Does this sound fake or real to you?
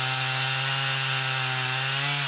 real